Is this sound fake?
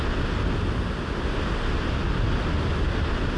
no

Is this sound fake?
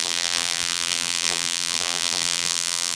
yes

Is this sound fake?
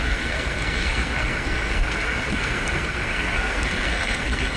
yes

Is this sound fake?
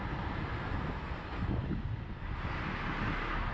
no